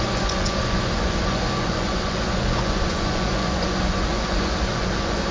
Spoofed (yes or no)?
yes